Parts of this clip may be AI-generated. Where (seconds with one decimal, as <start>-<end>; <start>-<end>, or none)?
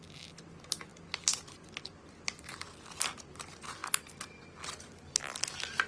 none